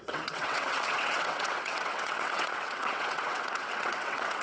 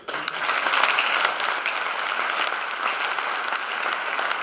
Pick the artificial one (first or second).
first